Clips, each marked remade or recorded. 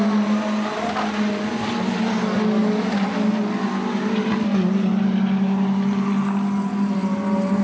recorded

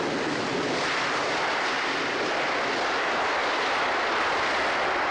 recorded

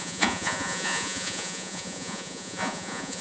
remade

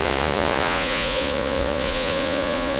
remade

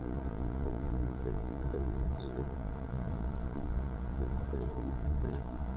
remade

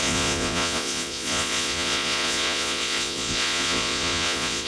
remade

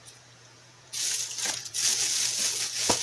remade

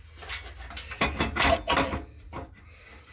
recorded